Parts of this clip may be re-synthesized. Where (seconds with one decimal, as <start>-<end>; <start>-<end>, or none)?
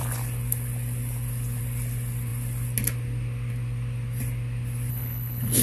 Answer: 4.9-5.6